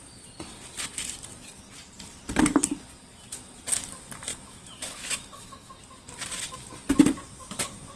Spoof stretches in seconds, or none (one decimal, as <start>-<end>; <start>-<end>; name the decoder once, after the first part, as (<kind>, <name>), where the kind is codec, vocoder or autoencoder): 4.3-5.7 (autoencoder, DAC-VAE)